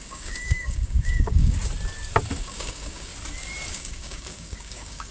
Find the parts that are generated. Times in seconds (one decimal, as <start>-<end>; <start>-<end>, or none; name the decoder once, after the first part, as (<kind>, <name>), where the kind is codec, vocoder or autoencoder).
0.0-1.6 (codec, DAC); 2.4-3.1; 3.7-5.1